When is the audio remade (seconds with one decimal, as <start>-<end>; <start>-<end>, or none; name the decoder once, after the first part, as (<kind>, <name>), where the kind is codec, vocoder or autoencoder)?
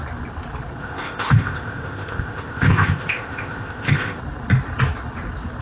0.8-4.2 (codec, ZipCodec)